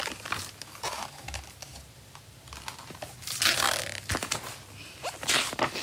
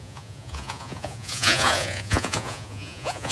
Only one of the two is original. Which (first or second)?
first